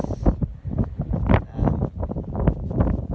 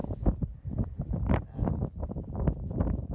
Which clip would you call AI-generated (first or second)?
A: second